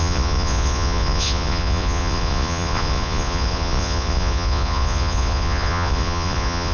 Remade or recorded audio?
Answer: remade